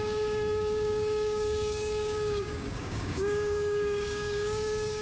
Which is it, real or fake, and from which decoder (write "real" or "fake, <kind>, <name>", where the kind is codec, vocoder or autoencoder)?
fake, codec, DAC